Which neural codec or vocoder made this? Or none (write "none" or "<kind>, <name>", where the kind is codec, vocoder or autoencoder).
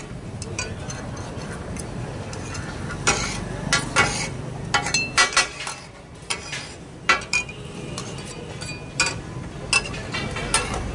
none